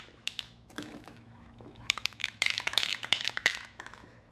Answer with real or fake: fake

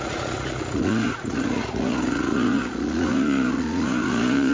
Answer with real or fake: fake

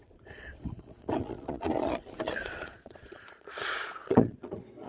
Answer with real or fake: fake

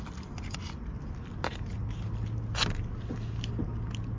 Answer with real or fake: real